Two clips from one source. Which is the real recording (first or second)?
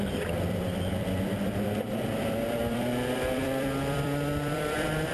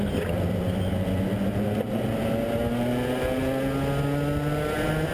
second